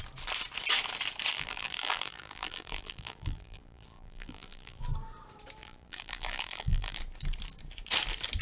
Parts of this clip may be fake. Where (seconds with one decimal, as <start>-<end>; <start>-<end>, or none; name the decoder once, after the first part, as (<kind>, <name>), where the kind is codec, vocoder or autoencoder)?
1.3-4.8 (vocoder, BigVGAN v2); 5.6-7.0